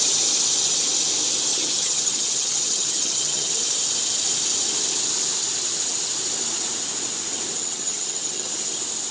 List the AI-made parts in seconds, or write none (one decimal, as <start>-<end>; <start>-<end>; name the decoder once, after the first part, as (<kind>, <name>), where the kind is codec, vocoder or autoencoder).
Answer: 1.5-3.5 (vocoder, HiFi-GAN); 7.6-8.5